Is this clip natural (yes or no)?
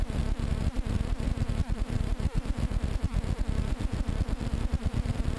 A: no